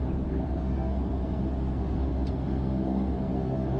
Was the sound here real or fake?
fake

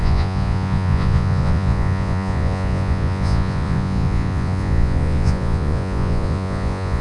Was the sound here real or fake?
fake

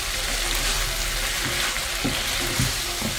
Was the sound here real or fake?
real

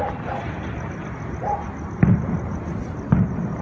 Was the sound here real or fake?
real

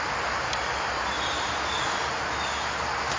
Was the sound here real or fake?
real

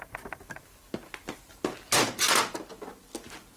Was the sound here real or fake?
real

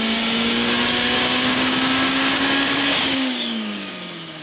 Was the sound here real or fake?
fake